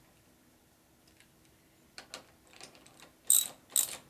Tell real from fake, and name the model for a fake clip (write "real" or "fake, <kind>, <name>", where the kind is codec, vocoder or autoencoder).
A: real